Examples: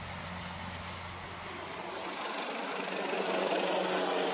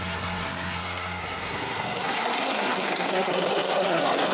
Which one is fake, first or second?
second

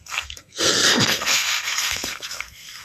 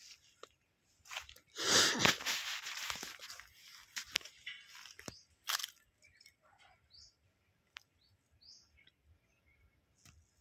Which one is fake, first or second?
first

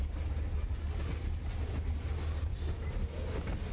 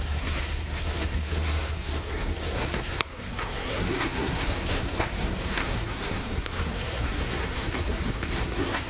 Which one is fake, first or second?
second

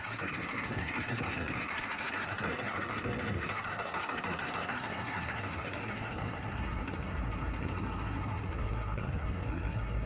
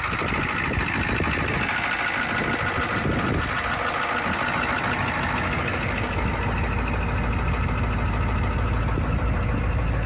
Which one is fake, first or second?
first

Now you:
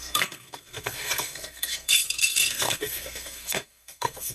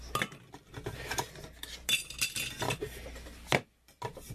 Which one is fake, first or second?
first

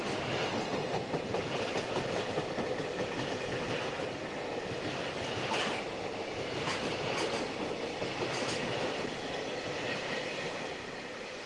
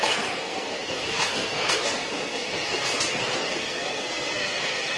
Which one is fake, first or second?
second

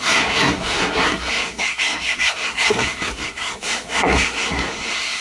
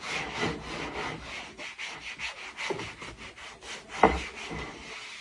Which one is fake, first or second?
first